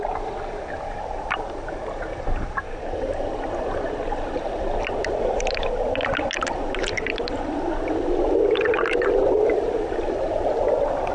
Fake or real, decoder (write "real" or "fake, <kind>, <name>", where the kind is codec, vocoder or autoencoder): real